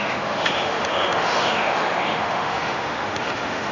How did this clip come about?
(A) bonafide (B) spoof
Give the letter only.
B